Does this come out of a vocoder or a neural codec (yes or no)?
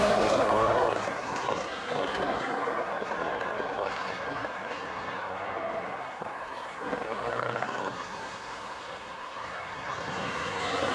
yes